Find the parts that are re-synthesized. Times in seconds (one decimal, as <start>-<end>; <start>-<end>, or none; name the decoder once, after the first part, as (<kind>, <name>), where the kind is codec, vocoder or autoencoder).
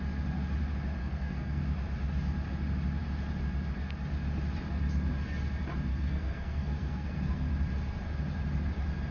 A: 1.0-1.6 (codec, SNAC); 5.9-7.5